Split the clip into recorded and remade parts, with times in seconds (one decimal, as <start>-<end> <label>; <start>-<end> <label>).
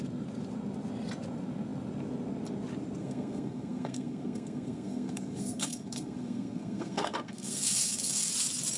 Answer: 0.0-3.0 recorded; 3.0-8.3 remade; 8.3-8.8 recorded